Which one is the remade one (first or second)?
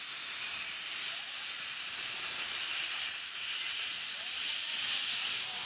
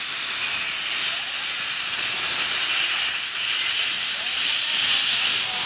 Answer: first